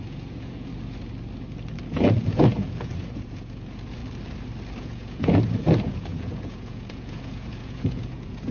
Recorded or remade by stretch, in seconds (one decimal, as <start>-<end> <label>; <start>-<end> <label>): 0.0-0.7 remade; 0.7-1.9 recorded; 1.9-4.0 remade; 4.0-4.8 recorded; 4.8-8.5 remade